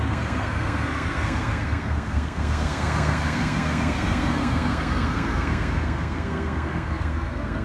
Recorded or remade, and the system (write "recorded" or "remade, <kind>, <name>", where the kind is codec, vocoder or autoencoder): remade, codec, SNAC